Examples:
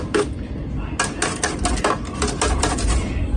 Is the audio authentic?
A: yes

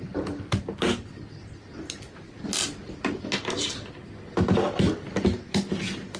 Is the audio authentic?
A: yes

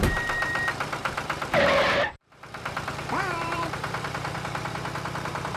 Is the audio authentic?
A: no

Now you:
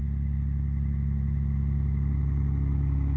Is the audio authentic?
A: yes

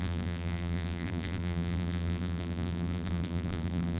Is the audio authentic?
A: no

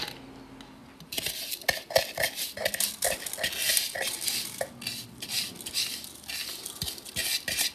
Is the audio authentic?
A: yes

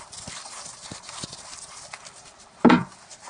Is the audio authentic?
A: no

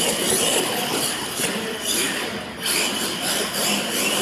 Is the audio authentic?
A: yes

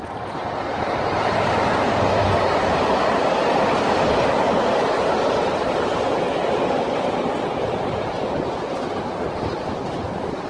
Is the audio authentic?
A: yes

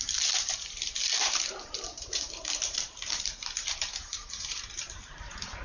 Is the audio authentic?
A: no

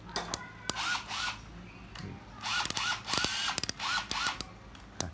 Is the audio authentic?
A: yes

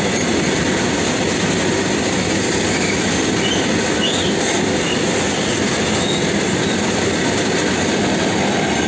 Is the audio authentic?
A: yes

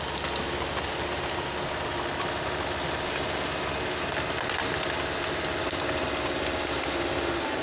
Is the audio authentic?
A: yes